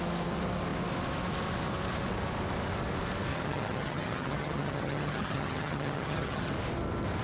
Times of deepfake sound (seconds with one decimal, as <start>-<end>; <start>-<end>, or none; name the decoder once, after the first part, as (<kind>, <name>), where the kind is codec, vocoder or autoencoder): 3.3-6.5 (vocoder, HiFi-GAN)

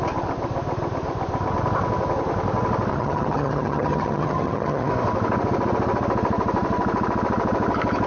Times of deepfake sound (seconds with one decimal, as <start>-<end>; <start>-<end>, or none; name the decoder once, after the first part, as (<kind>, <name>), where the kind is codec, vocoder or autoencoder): 2.9-4.9 (vocoder, HiFi-GAN)

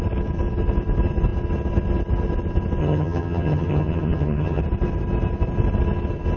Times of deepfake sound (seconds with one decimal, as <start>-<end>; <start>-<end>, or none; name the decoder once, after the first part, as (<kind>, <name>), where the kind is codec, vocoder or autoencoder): 2.8-4.6 (vocoder, HiFi-GAN)

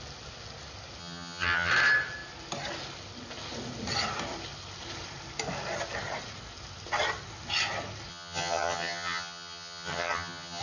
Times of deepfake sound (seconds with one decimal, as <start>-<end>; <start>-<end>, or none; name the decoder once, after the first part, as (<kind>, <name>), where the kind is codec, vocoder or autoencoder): 1.0-1.7 (vocoder, HiFi-GAN); 8.1-10.6

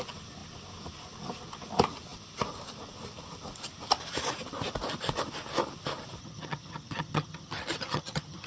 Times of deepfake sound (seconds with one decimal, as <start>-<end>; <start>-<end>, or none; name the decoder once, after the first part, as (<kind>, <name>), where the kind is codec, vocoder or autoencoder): 6.2-8.5 (vocoder, HiFi-GAN)

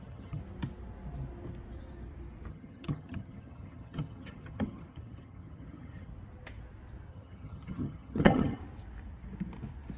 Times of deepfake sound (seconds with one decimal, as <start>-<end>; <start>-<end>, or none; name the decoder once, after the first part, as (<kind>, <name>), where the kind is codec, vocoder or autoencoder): 0.0-0.4 (vocoder, HiFi-GAN); 2.5-6.1; 7.1-8.6

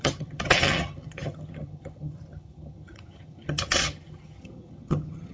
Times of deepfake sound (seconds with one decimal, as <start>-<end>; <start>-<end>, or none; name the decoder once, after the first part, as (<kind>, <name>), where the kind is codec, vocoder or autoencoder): 0.0-5.3 (vocoder, HiFi-GAN)

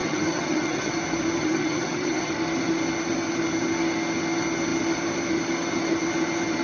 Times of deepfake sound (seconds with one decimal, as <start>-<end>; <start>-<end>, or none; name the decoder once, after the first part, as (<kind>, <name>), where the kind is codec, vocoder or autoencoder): 0.0-0.9 (vocoder, HiFi-GAN); 1.4-2.3